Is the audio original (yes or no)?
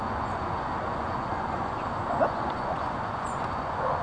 no